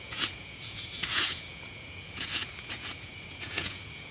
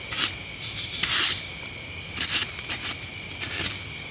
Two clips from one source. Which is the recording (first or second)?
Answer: second